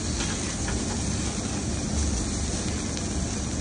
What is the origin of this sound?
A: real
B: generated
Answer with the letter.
A